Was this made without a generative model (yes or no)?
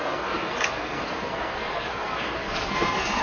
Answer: no